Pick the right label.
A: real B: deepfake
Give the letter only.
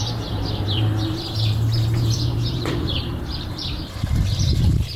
B